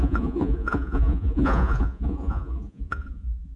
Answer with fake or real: fake